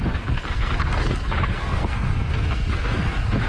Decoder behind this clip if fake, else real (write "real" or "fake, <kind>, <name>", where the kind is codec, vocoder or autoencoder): fake, codec, SNAC